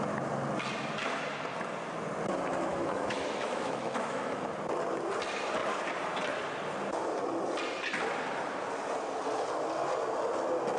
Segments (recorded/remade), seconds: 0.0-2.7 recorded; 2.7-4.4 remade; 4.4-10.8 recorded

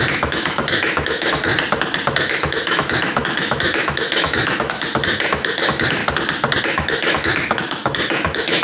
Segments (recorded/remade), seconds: 0.0-1.5 remade; 1.5-2.2 recorded; 2.2-6.0 remade; 6.0-6.6 recorded; 6.6-8.6 remade

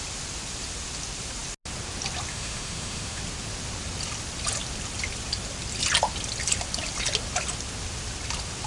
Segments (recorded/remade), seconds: 0.0-2.3 recorded; 2.3-3.2 remade; 3.2-8.7 recorded

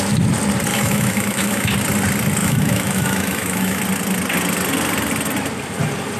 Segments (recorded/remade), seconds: 0.0-0.7 recorded; 0.7-1.7 remade; 1.7-2.4 recorded; 2.4-3.8 remade; 3.8-6.2 recorded

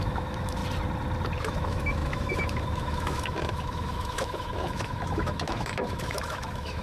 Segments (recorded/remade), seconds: 0.0-0.6 remade; 0.6-1.4 recorded; 1.4-6.8 remade

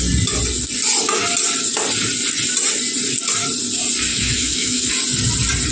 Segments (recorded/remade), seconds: 0.0-4.1 recorded; 4.1-4.9 remade; 4.9-5.7 recorded